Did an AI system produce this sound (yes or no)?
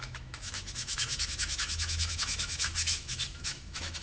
yes